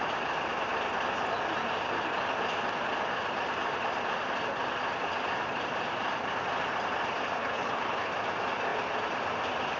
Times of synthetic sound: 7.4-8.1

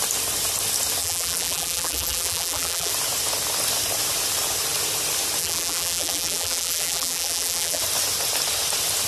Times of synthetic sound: 1.0-2.9; 5.4-7.8